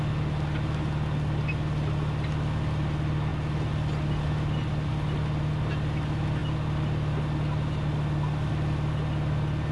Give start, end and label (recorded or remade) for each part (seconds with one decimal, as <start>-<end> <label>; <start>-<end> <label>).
0.0-9.7 recorded